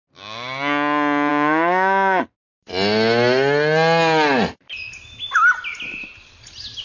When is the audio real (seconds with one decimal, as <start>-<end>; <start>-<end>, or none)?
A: 0.0-1.3; 2.2-6.8